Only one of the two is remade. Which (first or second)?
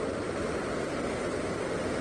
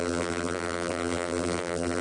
second